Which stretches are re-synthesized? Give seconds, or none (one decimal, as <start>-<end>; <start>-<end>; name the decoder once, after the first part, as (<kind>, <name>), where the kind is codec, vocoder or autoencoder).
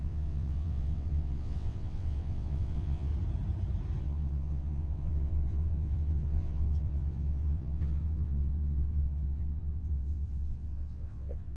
0.0-3.1 (vocoder, WaveNeXt); 4.0-11.6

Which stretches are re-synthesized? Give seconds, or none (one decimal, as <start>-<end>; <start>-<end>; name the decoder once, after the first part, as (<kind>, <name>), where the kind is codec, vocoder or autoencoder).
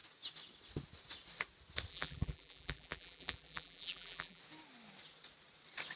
1.9-4.4 (vocoder, BigVGAN v2)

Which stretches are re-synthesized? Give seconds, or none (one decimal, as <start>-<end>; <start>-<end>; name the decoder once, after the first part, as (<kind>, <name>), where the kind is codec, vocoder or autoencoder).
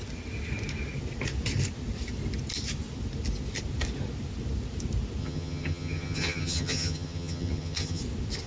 5.2-8.0 (vocoder, HiFi-GAN)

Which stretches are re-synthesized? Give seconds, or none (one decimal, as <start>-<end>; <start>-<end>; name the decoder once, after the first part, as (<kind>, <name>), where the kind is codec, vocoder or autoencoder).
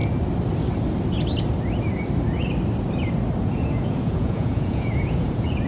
3.4-5.7 (vocoder, Vocos)